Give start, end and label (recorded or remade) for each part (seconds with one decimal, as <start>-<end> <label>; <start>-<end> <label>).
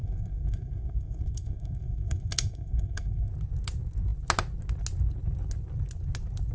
0.0-3.3 remade; 3.3-6.5 recorded